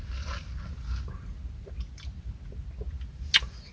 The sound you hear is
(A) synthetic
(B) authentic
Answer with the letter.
B